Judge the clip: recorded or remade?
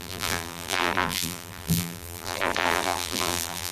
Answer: remade